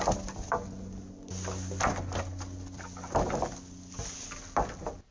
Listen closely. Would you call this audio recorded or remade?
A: recorded